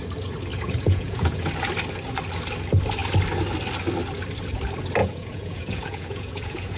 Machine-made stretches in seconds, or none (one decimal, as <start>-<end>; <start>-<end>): 0.5-1.5; 5.0-6.8